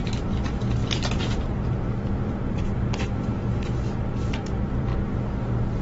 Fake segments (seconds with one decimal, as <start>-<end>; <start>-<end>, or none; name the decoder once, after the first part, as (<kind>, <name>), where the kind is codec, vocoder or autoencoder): 0.0-4.9 (vocoder, BigVGAN v2)